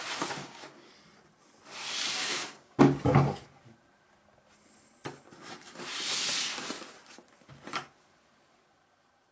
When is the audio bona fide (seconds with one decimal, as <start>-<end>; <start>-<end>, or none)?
0.0-0.4; 0.9-2.2; 2.8-9.3